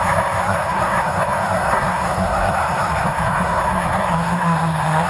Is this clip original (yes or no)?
no